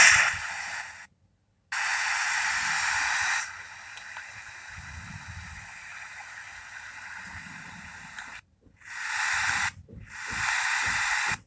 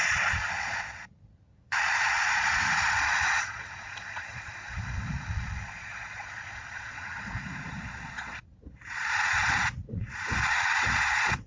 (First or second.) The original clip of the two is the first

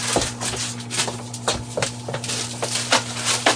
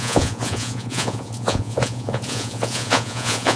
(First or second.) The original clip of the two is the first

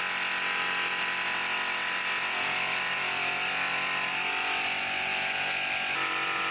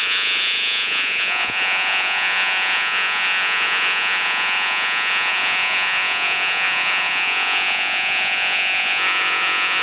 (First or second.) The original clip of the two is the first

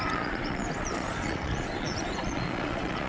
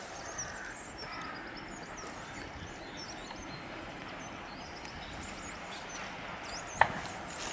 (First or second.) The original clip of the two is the second